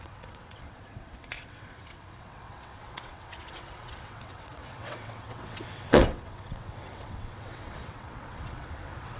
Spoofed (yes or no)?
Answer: yes